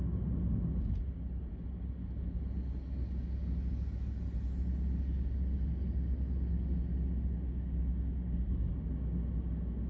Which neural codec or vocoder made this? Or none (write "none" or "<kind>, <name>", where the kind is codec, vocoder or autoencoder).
none